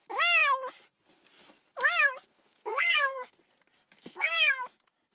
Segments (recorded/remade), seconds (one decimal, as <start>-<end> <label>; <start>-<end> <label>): 0.0-2.3 recorded; 2.3-3.3 remade; 3.3-4.0 recorded; 4.0-4.5 remade; 4.5-5.1 recorded